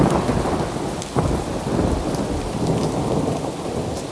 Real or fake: real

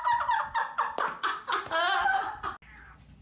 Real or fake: real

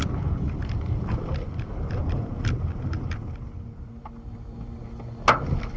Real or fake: real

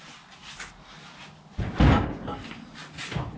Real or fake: real